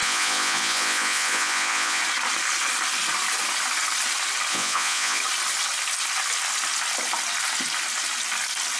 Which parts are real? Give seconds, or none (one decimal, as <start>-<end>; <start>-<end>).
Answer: 2.0-4.5; 5.2-8.8